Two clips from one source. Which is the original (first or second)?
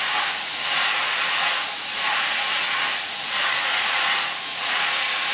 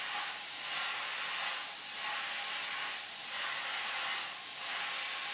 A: second